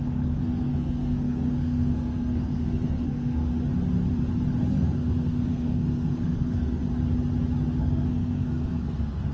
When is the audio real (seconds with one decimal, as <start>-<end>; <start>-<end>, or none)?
3.5-4.7; 6.8-7.8